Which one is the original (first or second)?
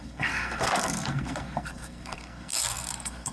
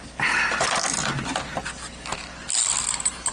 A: second